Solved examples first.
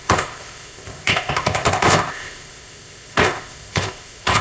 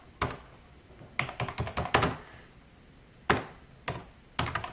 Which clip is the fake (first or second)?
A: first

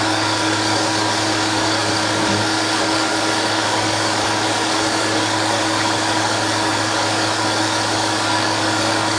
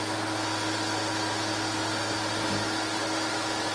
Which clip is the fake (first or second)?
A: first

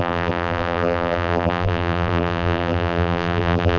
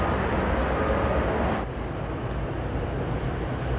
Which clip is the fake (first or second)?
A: first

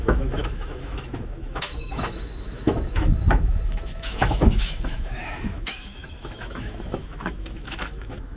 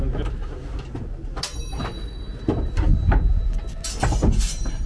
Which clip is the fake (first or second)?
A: first